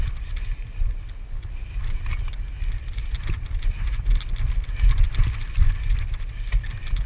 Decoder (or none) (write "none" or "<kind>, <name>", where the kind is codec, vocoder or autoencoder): none